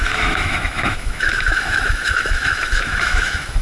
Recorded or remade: remade